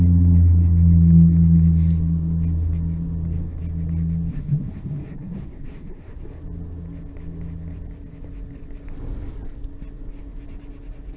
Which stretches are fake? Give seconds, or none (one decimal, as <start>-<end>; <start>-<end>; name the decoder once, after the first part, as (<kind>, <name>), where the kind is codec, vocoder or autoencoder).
4.3-6.3 (codec, SNAC)